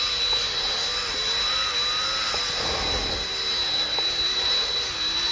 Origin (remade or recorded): recorded